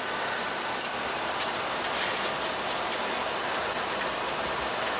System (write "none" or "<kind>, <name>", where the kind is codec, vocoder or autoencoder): none